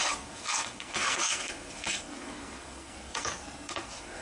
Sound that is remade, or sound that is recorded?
remade